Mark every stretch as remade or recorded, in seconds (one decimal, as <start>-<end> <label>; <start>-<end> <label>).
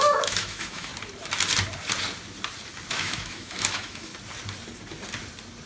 0.0-0.9 remade; 0.9-2.9 recorded; 2.9-4.1 remade; 4.1-5.7 recorded